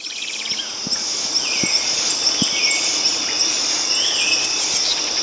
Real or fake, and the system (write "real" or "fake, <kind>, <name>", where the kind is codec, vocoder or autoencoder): real